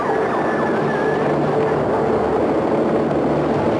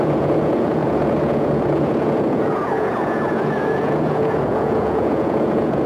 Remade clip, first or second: second